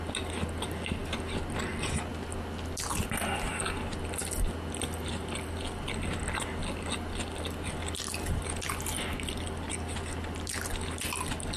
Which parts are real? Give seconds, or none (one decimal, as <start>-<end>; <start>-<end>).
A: 0.0-11.6